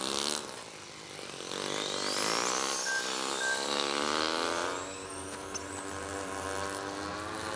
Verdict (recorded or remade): recorded